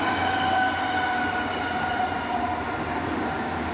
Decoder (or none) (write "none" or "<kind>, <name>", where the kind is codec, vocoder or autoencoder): none